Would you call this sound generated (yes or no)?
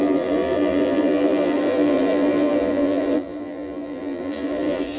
yes